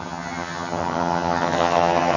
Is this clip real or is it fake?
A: fake